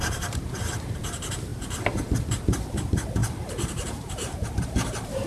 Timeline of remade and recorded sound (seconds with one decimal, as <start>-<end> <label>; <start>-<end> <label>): 0.0-1.5 remade; 1.5-2.3 recorded; 2.3-5.3 remade